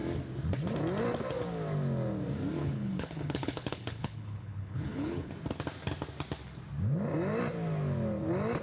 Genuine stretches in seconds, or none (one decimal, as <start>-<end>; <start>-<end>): 0.0-2.6; 5.3-8.6